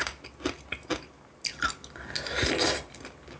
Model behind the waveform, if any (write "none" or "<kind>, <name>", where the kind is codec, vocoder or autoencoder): none